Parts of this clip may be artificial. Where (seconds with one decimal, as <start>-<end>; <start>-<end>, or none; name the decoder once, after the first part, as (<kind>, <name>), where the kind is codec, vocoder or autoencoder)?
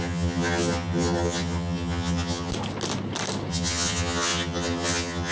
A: 0.0-2.5 (vocoder, HiFi-GAN); 3.5-5.3